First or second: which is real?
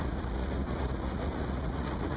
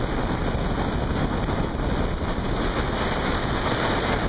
second